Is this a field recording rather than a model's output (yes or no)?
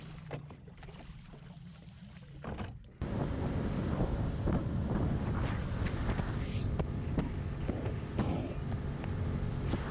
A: yes